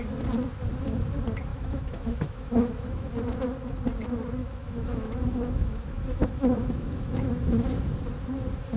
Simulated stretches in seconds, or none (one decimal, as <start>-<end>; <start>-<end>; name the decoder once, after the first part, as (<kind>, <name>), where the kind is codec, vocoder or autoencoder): 1.5-3.1 (autoencoder, DAC-VAE); 4.4-7.4